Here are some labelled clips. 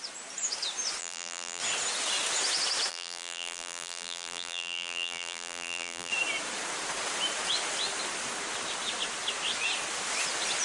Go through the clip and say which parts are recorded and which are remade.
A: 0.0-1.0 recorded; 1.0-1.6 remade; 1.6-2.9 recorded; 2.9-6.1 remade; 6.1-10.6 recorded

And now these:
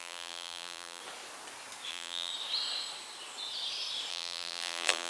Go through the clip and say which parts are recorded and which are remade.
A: 0.0-1.0 remade; 1.0-1.9 recorded; 1.9-2.3 remade; 2.3-4.1 recorded; 4.1-5.1 remade

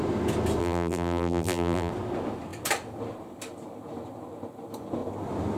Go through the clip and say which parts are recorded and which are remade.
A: 0.0-0.6 recorded; 0.6-1.9 remade; 1.9-5.6 recorded

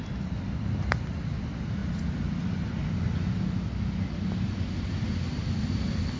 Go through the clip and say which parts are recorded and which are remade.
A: 0.0-0.7 remade; 0.7-6.2 recorded

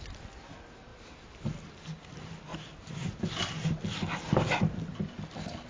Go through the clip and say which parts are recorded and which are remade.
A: 0.0-0.9 recorded; 0.9-1.7 remade; 1.7-2.5 recorded; 2.5-3.2 remade; 3.2-5.7 recorded

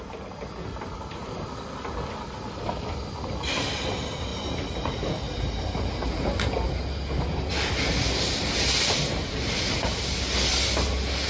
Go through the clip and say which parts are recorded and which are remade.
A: 0.0-4.3 recorded; 4.3-6.8 remade; 6.8-11.3 recorded